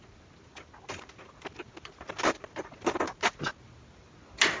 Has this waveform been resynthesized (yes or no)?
no